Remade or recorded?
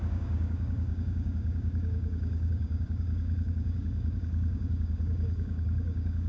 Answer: remade